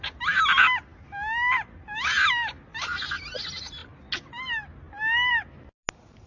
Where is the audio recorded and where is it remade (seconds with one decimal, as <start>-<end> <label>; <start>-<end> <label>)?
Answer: 0.0-6.3 recorded